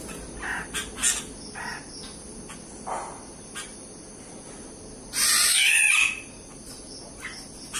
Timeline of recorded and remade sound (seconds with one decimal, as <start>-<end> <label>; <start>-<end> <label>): 0.0-7.8 recorded